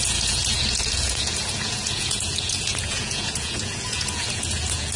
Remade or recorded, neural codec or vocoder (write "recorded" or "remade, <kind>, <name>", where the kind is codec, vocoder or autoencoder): remade, vocoder, Vocos